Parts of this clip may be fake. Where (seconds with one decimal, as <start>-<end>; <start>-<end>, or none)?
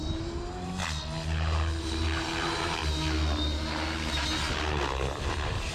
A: 0.0-0.8; 1.8-2.8; 5.3-5.7